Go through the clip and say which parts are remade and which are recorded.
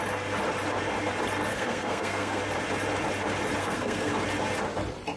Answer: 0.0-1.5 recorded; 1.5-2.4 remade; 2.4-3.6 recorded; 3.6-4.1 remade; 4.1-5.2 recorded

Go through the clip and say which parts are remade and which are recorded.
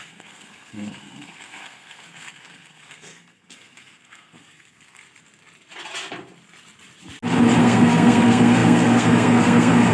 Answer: 0.0-5.0 remade; 5.0-7.6 recorded; 7.6-9.9 remade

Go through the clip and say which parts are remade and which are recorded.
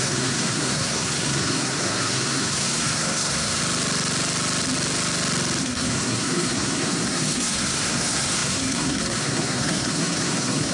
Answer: 0.0-3.6 remade; 3.6-5.6 recorded; 5.6-10.7 remade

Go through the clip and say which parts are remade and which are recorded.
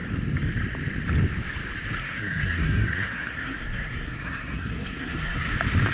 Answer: 0.0-2.0 recorded; 2.0-5.5 remade; 5.5-5.9 recorded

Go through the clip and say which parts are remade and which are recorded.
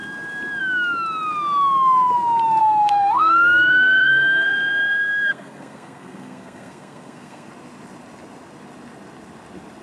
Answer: 0.0-2.6 recorded; 2.6-7.5 remade; 7.5-9.8 recorded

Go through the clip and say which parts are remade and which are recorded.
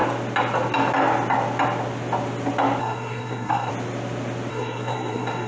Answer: 0.0-2.8 recorded; 2.8-3.7 remade; 3.7-4.5 recorded; 4.5-5.5 remade